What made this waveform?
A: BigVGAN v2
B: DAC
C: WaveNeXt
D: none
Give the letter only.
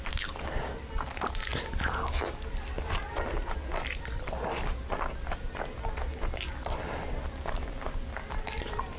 D